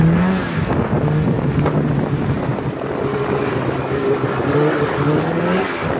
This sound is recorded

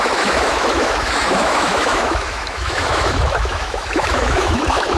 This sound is remade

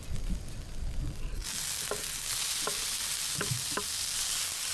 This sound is recorded